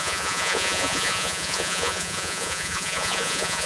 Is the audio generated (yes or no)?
yes